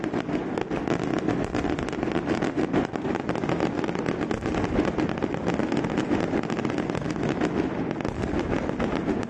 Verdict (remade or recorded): recorded